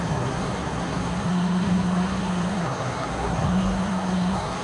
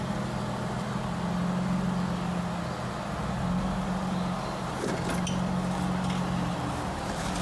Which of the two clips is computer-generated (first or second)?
first